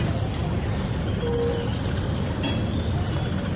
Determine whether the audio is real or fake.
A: real